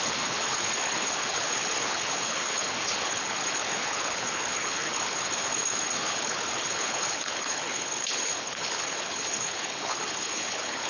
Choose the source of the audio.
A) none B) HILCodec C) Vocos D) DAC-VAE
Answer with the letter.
B